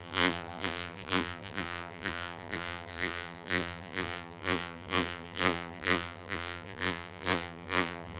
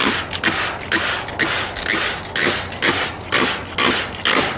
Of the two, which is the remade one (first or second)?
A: first